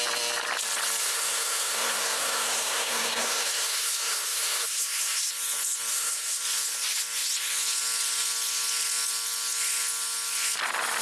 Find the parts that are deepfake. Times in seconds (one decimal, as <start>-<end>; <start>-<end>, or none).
1.0-5.3; 5.9-6.4